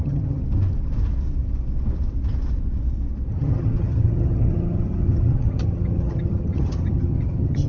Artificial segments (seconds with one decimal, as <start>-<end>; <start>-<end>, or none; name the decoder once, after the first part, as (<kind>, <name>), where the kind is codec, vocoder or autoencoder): 0.0-0.4 (vocoder, HiFi-GAN); 3.3-7.7